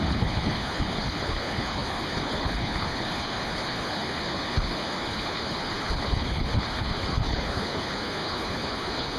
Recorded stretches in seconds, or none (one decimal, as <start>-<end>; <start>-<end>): none